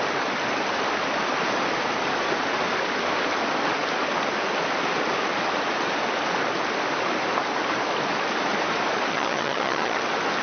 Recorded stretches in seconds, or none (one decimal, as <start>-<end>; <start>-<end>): 0.0-9.1; 10.0-10.4